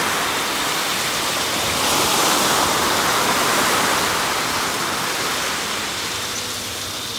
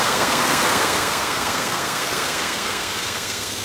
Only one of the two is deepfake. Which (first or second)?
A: second